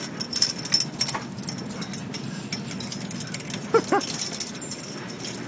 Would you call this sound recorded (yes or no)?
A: yes